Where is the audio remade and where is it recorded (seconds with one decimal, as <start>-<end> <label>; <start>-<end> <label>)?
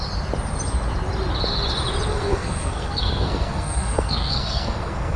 0.0-2.1 recorded; 2.1-5.2 remade